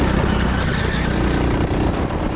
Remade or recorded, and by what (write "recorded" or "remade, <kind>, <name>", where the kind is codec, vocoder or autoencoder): recorded